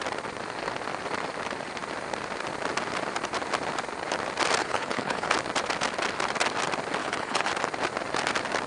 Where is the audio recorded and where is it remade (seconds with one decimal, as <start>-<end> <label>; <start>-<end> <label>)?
0.0-4.6 recorded; 4.6-5.3 remade; 5.3-7.0 recorded; 7.0-7.5 remade; 7.5-8.7 recorded